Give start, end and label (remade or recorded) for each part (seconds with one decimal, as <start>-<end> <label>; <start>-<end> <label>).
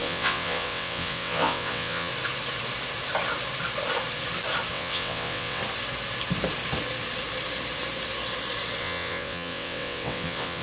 0.0-2.1 remade; 2.1-4.7 recorded; 4.7-5.6 remade; 5.6-8.8 recorded; 8.8-10.6 remade